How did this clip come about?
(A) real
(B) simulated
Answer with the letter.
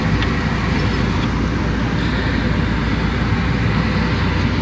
A